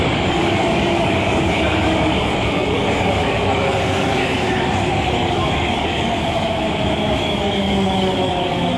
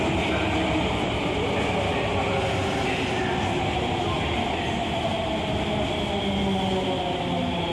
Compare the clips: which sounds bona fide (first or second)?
second